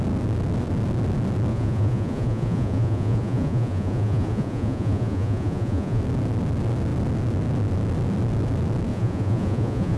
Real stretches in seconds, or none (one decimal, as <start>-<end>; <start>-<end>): 0.0-1.5; 6.0-8.9